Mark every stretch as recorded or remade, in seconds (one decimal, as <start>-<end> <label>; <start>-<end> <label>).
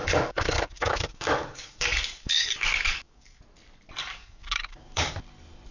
0.0-3.4 remade; 3.4-4.0 recorded; 4.0-5.1 remade; 5.1-5.7 recorded